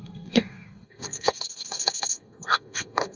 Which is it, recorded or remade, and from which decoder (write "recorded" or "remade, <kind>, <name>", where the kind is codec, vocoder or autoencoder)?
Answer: remade, codec, SNAC